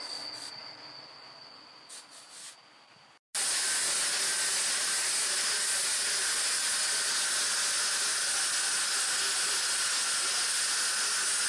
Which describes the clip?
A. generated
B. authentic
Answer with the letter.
B